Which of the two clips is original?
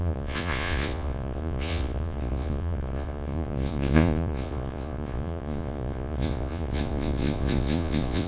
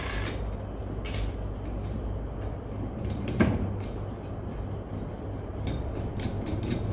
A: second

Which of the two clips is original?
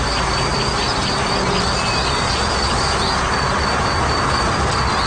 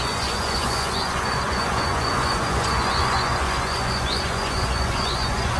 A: first